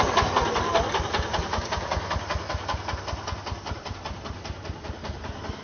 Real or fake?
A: real